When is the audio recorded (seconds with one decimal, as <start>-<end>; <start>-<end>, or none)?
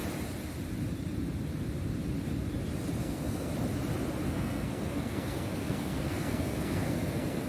0.0-3.0; 3.5-4.3